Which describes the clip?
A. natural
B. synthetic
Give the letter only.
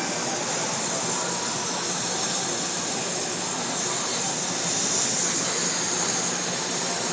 A